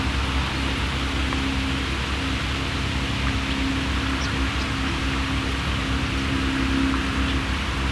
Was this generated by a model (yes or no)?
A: no